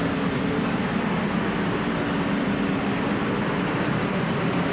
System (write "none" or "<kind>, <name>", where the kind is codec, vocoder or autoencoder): vocoder, BigVGAN v2